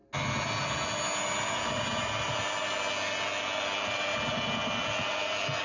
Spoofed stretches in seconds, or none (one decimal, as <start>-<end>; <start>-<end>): none